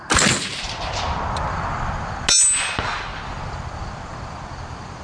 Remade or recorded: recorded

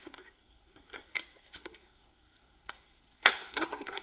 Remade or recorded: remade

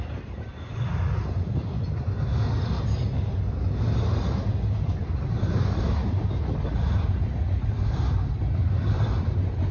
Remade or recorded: recorded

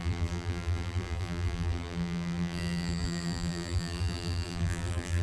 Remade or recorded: remade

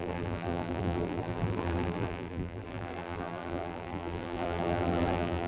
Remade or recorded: remade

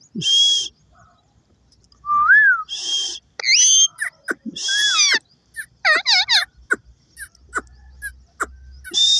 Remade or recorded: recorded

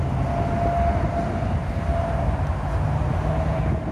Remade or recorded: recorded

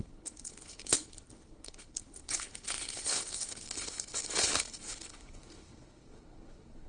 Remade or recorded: remade